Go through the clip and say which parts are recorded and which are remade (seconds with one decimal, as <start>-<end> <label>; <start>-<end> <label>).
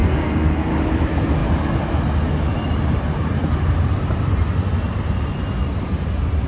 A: 0.0-0.7 remade; 0.7-6.5 recorded